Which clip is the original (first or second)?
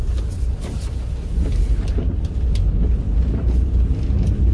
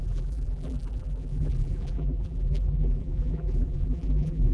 first